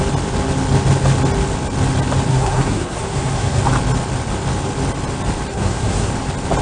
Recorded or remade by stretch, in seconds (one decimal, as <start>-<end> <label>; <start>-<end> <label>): 0.0-2.3 recorded; 2.3-3.6 remade; 3.6-5.5 recorded; 5.5-6.1 remade; 6.1-6.6 recorded